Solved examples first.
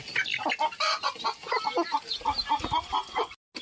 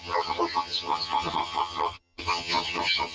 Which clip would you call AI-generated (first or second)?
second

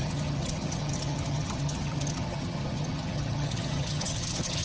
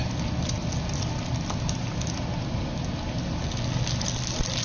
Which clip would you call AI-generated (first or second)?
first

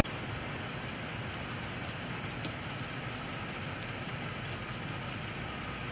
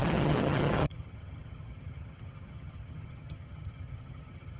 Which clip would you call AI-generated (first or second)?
second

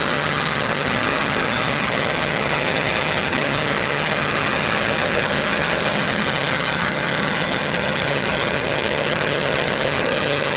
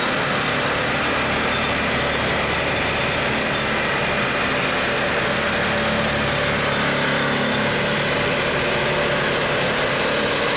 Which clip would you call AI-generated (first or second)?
first